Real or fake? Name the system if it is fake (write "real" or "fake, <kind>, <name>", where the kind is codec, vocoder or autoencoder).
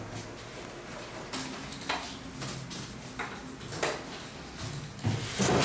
real